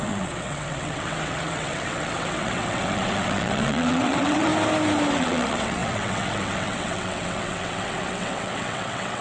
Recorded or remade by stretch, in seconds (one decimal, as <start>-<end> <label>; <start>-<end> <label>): 0.0-4.5 remade; 4.5-5.1 recorded; 5.1-9.2 remade